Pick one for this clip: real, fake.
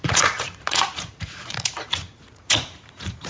fake